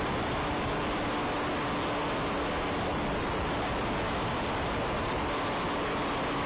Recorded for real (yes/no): yes